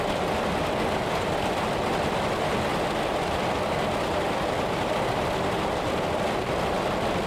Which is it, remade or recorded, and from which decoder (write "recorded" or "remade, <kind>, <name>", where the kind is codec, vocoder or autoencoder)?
recorded